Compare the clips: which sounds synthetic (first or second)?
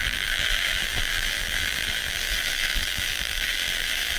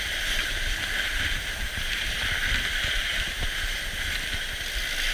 first